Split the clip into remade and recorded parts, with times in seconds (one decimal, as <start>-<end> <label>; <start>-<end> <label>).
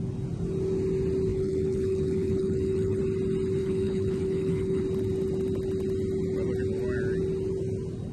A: 0.0-1.3 recorded; 1.3-3.0 remade; 3.0-3.6 recorded; 3.6-4.8 remade; 4.8-8.1 recorded